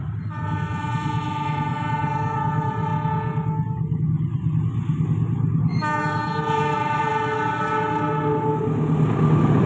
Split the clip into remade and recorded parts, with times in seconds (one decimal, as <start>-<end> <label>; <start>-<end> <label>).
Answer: 0.0-2.9 remade; 2.9-6.0 recorded; 6.0-7.1 remade; 7.1-9.7 recorded